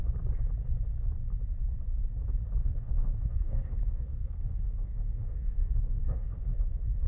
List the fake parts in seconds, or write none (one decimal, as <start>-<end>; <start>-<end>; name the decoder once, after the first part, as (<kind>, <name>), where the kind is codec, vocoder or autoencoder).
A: 2.6-7.1 (codec, SNAC)